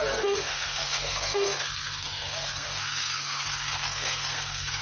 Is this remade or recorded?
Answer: remade